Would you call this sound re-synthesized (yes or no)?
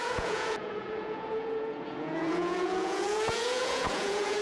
yes